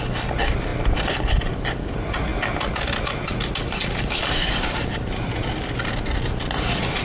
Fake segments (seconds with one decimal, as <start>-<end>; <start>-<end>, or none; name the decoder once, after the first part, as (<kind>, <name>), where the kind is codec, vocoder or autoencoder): none